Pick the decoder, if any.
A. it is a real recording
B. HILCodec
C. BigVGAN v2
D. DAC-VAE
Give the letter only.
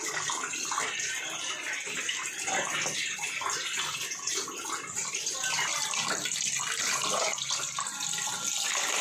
A